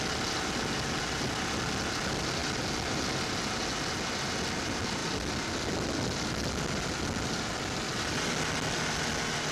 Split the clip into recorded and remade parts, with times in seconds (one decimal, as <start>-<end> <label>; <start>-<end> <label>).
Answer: 0.0-9.5 recorded